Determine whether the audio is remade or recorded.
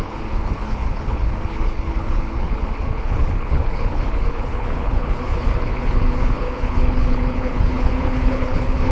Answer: remade